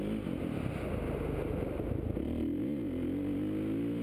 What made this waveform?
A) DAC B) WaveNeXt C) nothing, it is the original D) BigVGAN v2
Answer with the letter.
C